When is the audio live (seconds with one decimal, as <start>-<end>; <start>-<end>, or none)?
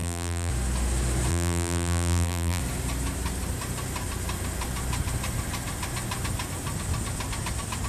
0.5-1.3; 2.6-7.9